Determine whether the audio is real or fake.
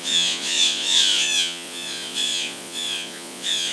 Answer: fake